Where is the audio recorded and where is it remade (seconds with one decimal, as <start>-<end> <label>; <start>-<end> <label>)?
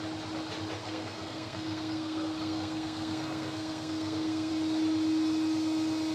0.0-0.8 recorded; 0.8-4.5 remade; 4.5-6.1 recorded